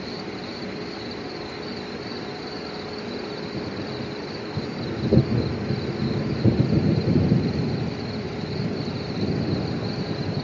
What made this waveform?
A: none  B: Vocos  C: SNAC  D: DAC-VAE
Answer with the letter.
A